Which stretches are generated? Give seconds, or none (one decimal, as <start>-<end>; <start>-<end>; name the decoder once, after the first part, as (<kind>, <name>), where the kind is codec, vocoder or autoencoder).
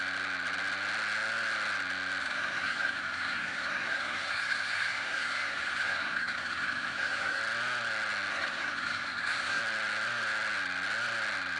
2.2-7.4 (codec, SNAC); 8.3-9.6